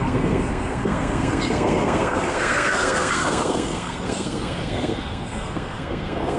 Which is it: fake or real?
fake